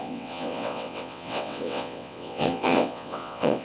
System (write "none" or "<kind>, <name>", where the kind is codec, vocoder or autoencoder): vocoder, WaveNeXt